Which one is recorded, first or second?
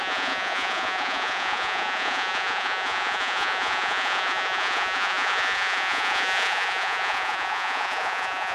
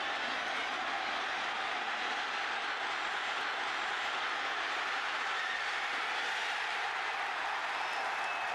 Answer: second